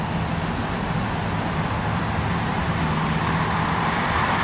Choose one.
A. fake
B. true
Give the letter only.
B